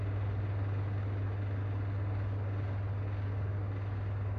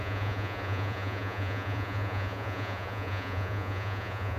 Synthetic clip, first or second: second